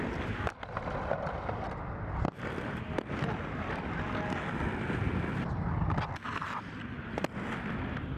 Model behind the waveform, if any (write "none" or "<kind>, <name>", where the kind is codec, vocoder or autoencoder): none